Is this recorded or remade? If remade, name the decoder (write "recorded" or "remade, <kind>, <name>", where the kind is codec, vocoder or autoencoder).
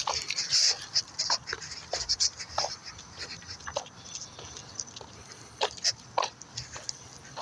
recorded